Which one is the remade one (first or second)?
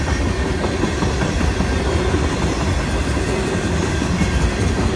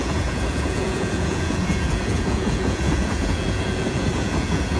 second